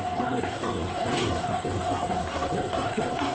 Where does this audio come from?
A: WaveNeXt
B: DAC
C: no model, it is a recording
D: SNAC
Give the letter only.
D